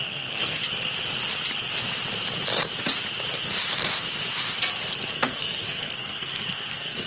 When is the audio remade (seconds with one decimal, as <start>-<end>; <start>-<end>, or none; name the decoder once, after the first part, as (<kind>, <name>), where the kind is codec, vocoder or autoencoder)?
0.0-0.6 (codec, SNAC); 4.9-7.1